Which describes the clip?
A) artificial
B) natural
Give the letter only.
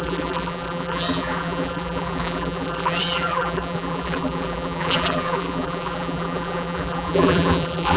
A